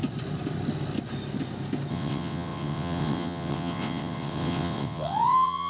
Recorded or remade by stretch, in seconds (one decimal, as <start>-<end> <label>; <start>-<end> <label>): 0.0-1.9 recorded; 1.9-5.7 remade